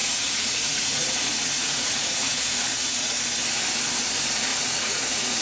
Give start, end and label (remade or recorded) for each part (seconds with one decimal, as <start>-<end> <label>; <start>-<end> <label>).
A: 0.0-3.2 remade; 3.2-4.5 recorded; 4.5-5.4 remade